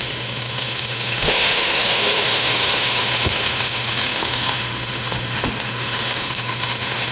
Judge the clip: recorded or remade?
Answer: remade